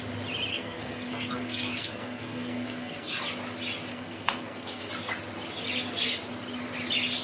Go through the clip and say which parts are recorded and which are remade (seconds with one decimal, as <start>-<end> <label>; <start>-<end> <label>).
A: 0.0-0.5 recorded; 0.5-3.2 remade; 3.2-3.9 recorded; 3.9-4.9 remade; 4.9-7.2 recorded